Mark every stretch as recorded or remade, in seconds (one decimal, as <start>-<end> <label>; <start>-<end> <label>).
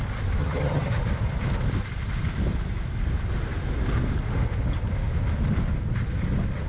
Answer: 0.0-0.4 recorded; 0.4-1.0 remade; 1.0-6.7 recorded